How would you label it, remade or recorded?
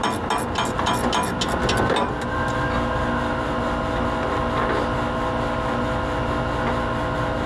recorded